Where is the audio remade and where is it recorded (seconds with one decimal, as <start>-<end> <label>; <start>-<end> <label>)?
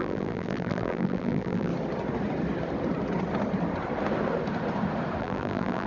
0.0-1.7 remade; 1.7-5.2 recorded; 5.2-5.9 remade